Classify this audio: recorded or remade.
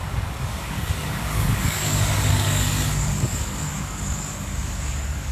remade